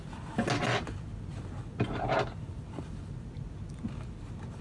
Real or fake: real